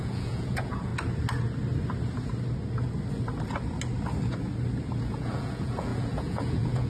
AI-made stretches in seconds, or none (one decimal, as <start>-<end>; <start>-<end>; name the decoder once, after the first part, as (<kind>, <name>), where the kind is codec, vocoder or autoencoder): 0.0-0.9 (vocoder, Vocos); 5.0-6.9